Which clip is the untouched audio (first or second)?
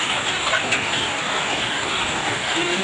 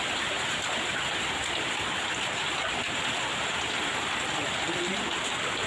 second